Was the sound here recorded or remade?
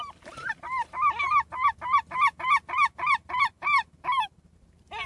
remade